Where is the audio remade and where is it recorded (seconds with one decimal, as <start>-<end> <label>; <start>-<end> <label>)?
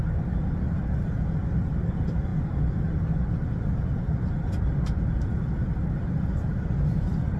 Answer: 0.0-7.4 recorded